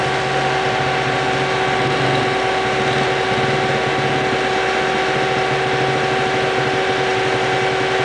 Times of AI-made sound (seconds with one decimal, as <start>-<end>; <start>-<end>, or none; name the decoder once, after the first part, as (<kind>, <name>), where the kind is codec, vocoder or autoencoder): none